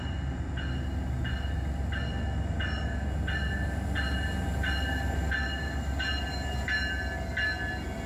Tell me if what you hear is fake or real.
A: real